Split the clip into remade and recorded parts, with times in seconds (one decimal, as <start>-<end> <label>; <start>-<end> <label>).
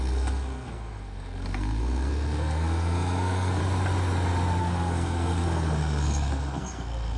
0.0-3.6 remade; 3.6-4.6 recorded; 4.6-7.2 remade